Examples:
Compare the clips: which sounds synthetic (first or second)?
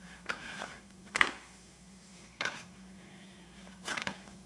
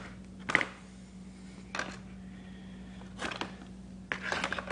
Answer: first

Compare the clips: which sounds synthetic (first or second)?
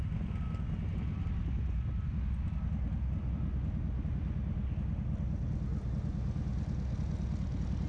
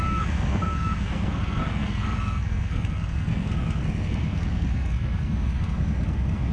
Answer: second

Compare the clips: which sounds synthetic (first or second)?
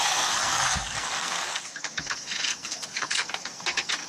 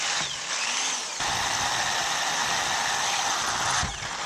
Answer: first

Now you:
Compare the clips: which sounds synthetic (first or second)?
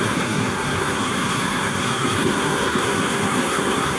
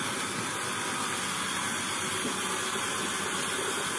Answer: first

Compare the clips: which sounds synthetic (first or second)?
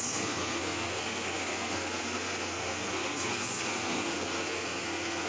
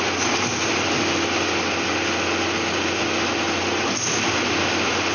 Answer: first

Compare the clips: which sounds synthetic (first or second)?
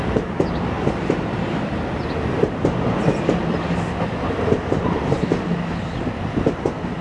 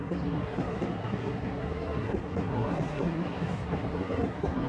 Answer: second